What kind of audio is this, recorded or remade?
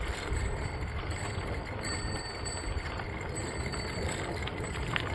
remade